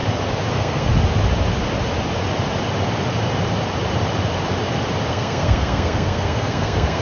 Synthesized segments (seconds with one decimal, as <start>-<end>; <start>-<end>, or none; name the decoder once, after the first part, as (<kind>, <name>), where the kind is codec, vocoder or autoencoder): 0.5-0.9 (codec, SNAC); 5.1-7.0